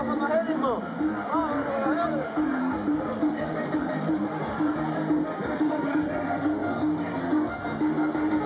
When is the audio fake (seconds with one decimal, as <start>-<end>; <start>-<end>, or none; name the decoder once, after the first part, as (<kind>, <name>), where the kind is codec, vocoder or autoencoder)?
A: 0.0-4.7 (vocoder, BigVGAN v2)